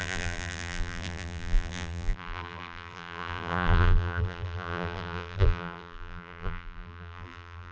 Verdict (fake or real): fake